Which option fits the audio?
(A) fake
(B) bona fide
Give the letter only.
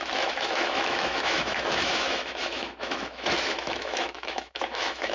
A